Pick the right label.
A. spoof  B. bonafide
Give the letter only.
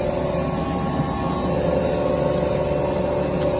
B